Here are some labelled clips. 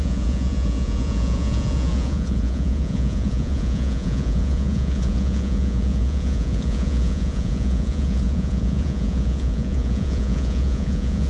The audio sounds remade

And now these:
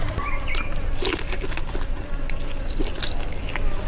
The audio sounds recorded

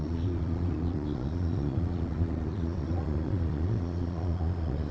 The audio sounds remade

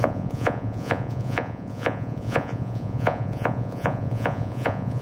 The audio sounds remade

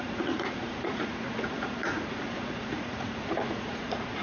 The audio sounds remade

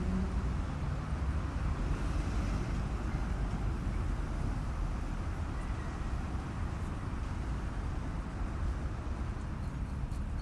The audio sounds recorded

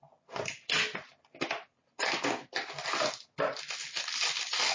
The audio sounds recorded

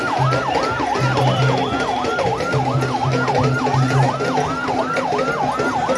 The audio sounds recorded